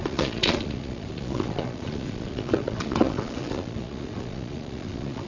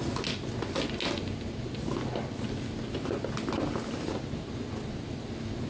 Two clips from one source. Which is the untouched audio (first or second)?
second